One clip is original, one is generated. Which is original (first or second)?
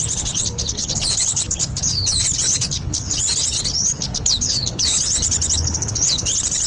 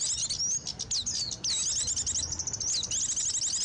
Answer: second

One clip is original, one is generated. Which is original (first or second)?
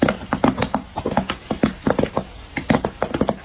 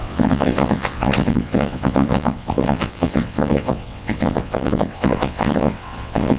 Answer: first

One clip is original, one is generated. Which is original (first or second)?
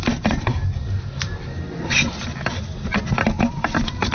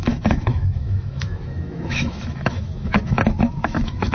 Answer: first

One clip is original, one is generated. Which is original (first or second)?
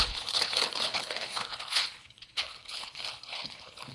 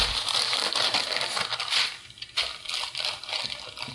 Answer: second